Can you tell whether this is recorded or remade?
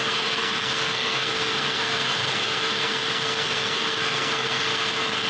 remade